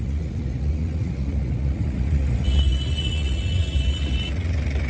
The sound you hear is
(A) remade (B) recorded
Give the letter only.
A